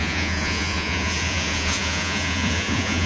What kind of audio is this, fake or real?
fake